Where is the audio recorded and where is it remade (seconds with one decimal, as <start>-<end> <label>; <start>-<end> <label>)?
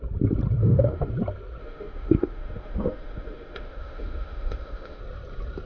0.0-0.6 recorded; 0.6-1.1 remade; 1.1-1.6 recorded; 1.6-5.0 remade; 5.0-5.7 recorded